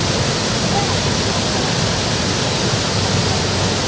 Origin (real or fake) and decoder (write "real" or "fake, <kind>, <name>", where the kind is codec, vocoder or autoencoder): real